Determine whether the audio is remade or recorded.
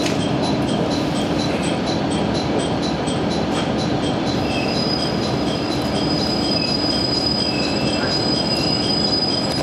remade